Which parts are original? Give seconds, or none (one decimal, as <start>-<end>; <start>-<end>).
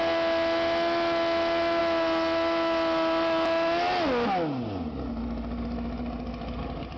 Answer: 0.0-7.0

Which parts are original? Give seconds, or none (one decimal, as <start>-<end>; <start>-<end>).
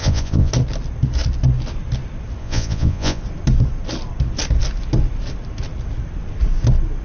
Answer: 0.5-2.4; 3.2-7.0